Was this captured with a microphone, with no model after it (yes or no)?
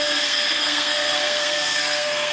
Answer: no